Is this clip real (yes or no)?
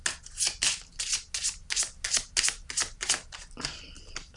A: yes